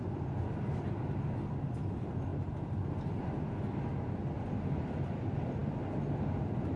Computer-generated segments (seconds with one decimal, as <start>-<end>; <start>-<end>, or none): none